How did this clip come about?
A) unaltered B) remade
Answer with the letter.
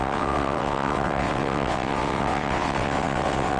B